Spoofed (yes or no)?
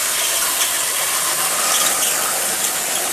no